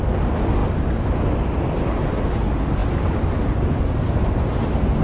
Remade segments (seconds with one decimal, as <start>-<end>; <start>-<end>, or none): none